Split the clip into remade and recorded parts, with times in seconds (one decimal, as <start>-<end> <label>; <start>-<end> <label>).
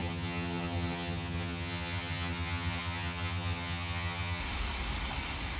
0.0-4.4 remade; 4.4-5.6 recorded